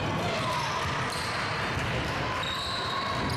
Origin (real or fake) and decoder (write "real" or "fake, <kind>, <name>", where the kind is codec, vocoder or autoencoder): real